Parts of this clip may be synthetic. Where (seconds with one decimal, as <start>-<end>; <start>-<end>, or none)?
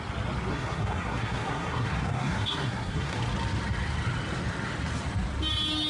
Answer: 0.5-3.2